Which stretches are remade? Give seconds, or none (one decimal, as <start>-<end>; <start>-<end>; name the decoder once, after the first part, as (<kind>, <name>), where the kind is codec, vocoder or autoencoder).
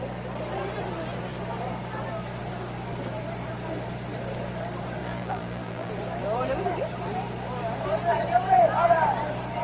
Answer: 5.0-5.9 (vocoder, BigVGAN v2)